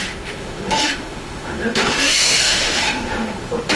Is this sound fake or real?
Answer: fake